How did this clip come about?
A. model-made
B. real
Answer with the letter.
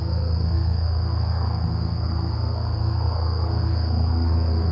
A